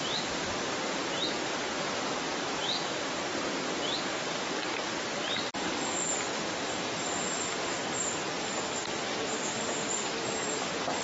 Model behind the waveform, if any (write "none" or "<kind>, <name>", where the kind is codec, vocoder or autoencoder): none